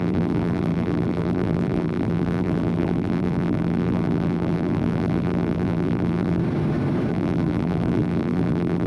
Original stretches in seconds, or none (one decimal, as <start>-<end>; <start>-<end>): 6.4-7.1